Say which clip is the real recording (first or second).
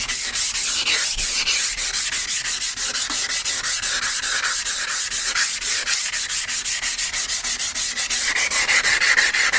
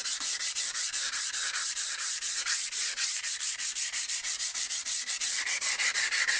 first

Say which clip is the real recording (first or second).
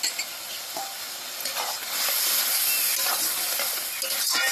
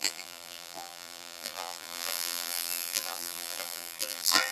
first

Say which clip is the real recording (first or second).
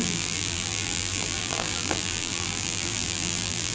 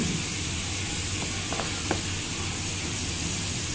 second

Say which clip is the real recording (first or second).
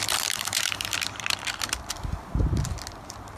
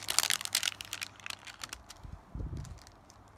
second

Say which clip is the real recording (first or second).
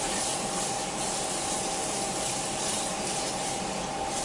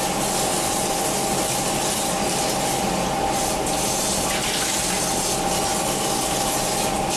second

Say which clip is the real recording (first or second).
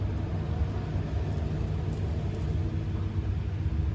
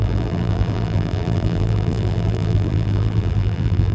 first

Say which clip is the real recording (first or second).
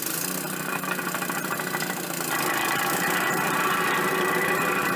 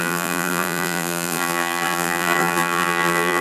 first